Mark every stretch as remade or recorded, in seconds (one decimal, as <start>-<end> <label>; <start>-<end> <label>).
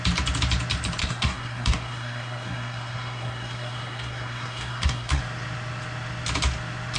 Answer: 0.0-1.0 recorded; 1.0-5.2 remade; 5.2-7.0 recorded